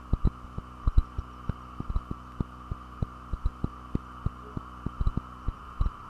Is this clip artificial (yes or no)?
no